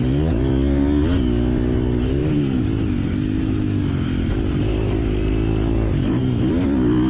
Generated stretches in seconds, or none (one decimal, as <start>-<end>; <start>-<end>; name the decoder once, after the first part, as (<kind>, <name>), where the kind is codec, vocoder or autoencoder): none

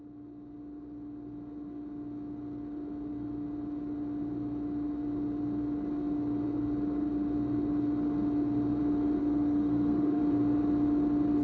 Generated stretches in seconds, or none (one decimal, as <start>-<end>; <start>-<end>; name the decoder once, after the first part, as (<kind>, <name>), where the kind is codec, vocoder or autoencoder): 9.2-10.2 (codec, SNAC)

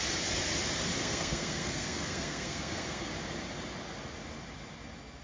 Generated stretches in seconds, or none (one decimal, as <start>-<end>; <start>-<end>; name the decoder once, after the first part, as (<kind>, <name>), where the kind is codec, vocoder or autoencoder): 1.0-3.1 (codec, SNAC)

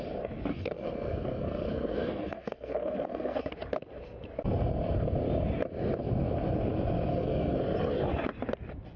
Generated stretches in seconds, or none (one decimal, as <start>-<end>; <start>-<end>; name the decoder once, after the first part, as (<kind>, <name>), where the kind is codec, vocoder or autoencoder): 0.5-3.5 (codec, SNAC); 7.1-7.6

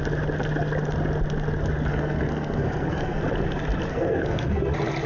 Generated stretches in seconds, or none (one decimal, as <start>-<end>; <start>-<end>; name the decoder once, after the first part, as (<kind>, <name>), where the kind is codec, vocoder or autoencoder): 1.9-3.2 (codec, SNAC); 3.9-4.6

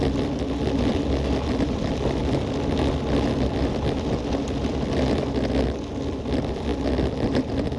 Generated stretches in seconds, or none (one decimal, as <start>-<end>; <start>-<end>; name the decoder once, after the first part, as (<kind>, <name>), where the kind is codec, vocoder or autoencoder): none